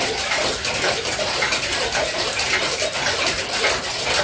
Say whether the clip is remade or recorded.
recorded